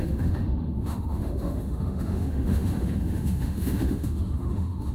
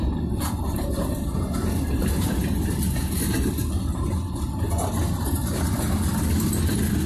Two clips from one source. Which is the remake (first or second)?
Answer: first